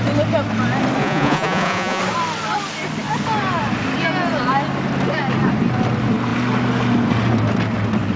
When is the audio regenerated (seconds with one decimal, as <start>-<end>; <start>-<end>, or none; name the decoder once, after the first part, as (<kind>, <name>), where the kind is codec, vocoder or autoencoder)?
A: 1.0-2.0 (vocoder, Vocos)